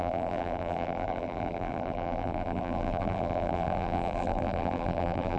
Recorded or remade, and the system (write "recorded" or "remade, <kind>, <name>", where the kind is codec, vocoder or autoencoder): remade, vocoder, BigVGAN v2